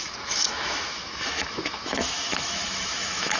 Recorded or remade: remade